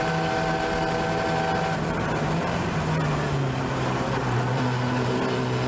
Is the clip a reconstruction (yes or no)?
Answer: no